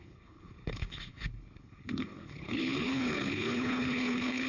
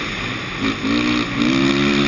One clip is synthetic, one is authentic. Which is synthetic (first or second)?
first